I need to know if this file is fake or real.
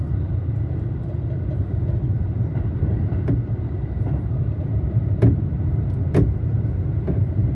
fake